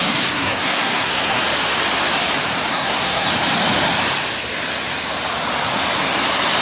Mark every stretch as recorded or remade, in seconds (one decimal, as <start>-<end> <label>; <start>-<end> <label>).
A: 0.0-1.4 remade; 1.4-2.7 recorded; 2.7-3.3 remade; 3.3-6.6 recorded